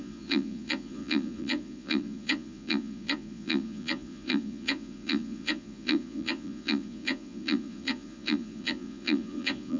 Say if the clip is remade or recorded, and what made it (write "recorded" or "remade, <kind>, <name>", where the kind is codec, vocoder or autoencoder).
remade, vocoder, Vocos